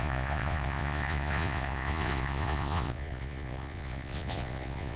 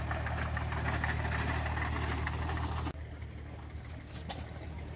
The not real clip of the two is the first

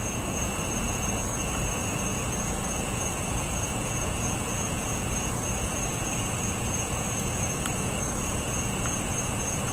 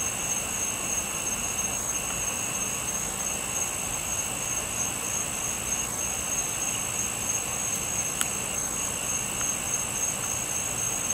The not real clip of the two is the first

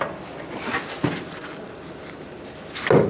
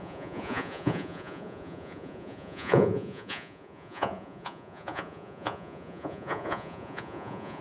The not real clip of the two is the second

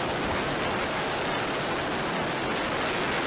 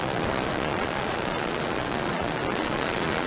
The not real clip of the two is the second